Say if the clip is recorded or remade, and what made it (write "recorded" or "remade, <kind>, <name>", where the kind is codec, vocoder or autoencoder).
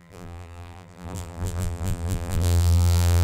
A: remade, vocoder, BigVGAN v2